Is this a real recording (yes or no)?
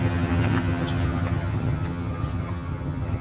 no